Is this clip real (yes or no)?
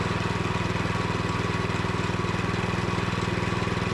yes